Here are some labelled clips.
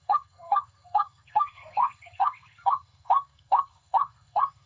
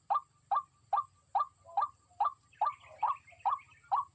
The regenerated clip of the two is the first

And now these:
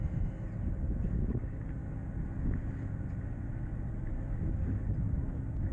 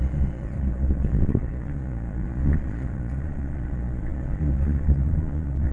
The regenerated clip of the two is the second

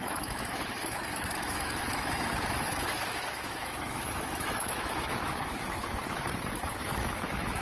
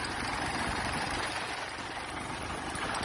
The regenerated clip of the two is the first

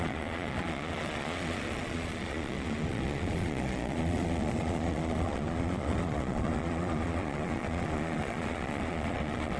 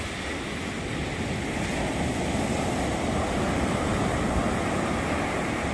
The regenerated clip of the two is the first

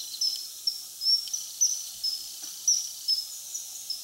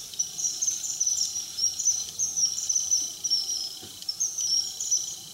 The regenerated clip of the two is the second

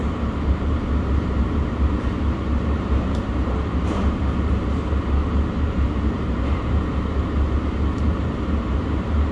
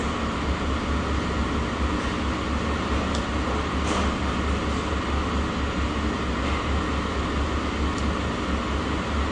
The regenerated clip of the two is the first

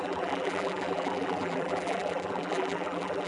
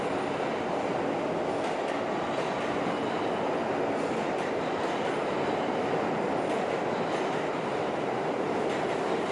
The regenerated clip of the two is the first